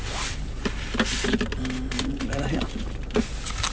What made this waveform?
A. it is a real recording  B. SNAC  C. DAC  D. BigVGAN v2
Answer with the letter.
A